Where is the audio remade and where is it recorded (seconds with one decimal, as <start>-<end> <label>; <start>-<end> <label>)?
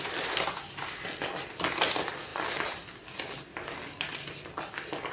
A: 0.0-5.1 recorded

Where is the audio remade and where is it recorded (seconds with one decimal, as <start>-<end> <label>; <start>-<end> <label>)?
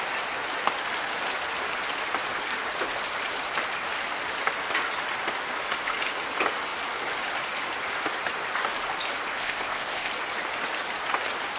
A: 0.0-9.4 recorded; 9.4-10.1 remade; 10.1-11.6 recorded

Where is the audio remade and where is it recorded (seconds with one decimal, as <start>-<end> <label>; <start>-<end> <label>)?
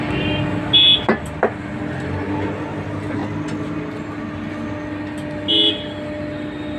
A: 0.0-6.8 recorded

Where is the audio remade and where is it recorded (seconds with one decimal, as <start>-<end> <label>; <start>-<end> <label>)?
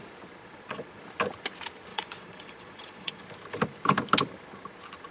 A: 0.0-0.4 recorded; 0.4-1.0 remade; 1.0-1.9 recorded; 1.9-3.2 remade; 3.2-5.1 recorded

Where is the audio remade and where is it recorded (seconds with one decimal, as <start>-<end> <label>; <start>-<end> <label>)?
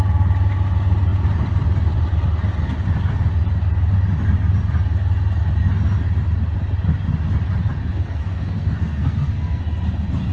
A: 0.0-7.8 recorded; 7.8-9.6 remade; 9.6-10.3 recorded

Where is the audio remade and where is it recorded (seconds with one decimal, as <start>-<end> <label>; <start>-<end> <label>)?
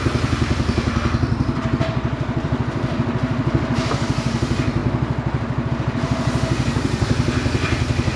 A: 0.0-4.8 remade; 4.8-5.7 recorded; 5.7-8.2 remade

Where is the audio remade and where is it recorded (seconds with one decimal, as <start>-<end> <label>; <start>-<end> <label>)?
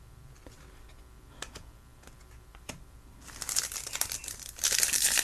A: 0.0-5.2 recorded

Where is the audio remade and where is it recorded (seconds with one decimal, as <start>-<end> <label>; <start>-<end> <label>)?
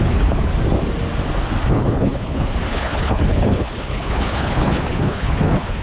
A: 0.0-0.5 remade; 0.5-1.7 recorded; 1.7-5.8 remade